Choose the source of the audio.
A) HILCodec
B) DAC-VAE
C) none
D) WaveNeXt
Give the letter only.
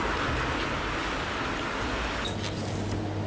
C